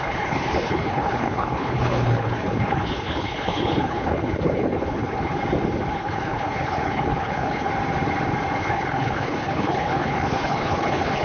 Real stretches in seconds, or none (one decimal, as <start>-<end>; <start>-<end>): 5.3-5.9; 7.7-8.6